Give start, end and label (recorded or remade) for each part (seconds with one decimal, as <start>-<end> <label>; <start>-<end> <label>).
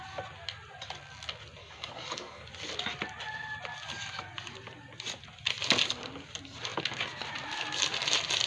0.0-1.6 recorded; 1.6-2.5 remade; 2.5-8.5 recorded